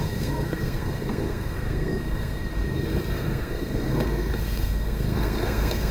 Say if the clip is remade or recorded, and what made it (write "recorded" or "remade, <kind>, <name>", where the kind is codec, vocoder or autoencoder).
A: remade, codec, SNAC